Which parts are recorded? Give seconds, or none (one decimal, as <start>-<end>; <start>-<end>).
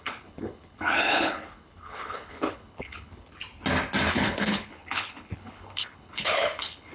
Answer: 3.3-4.1